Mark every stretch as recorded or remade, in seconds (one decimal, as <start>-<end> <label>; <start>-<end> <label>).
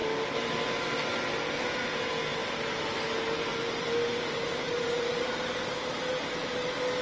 0.0-3.5 recorded; 3.5-6.5 remade; 6.5-7.0 recorded